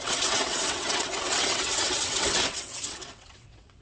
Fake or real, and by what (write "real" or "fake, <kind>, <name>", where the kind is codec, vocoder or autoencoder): fake, vocoder, WaveNeXt